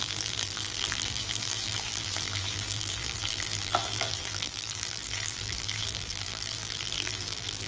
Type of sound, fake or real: fake